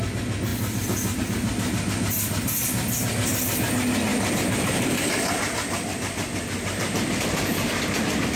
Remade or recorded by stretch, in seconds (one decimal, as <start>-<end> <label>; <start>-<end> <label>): 0.0-4.1 recorded; 4.1-5.4 remade; 5.4-8.4 recorded